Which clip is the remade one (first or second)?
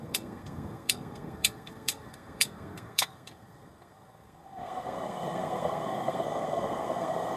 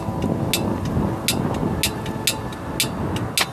first